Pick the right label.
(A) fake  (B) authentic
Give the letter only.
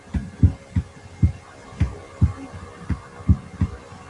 A